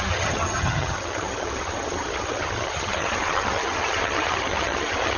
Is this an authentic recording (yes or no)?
no